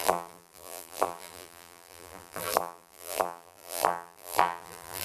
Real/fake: fake